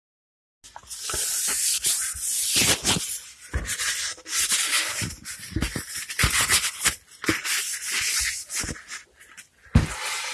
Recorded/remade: recorded